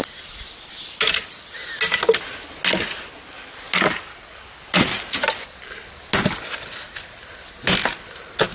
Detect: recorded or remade recorded